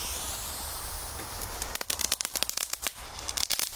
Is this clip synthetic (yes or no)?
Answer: yes